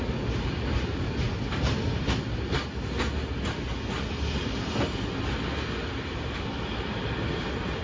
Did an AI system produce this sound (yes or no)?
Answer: no